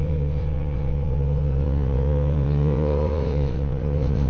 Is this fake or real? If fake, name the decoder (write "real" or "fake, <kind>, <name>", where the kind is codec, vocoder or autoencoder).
fake, vocoder, WaveNeXt